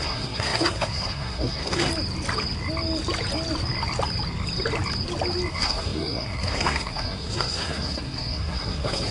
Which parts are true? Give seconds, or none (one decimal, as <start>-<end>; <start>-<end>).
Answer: 1.9-5.5